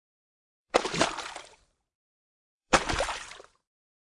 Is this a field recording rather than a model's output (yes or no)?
no